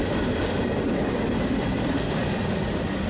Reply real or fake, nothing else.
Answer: real